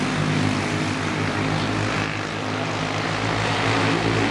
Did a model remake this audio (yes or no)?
no